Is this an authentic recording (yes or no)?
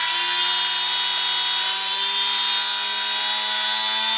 yes